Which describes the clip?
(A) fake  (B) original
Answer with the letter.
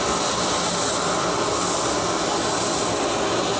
B